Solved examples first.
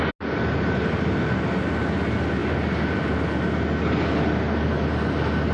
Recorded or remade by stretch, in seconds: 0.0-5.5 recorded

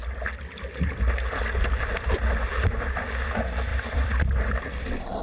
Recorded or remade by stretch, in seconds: 0.0-3.1 remade; 3.1-3.7 recorded; 3.7-5.2 remade